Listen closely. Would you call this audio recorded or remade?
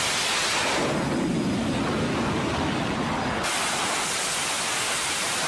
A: recorded